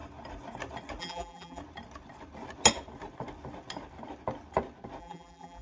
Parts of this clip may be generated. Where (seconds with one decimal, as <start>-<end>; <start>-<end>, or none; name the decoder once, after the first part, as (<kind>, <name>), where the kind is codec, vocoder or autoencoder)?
1.0-1.6 (vocoder, BigVGAN v2); 5.0-5.6